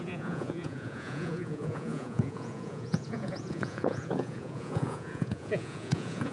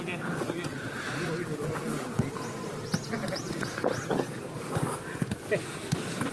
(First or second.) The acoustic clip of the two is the second